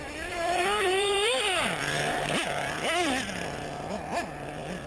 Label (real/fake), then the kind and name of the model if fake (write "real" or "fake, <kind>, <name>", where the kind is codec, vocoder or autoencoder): fake, vocoder, BigVGAN v2